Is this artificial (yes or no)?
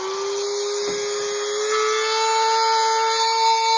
no